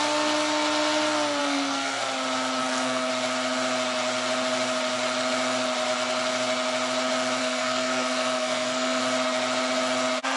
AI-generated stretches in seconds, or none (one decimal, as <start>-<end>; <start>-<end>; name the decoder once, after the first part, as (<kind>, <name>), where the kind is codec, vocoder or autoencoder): 1.4-2.0 (codec, SNAC); 2.6-3.1; 7.4-9.0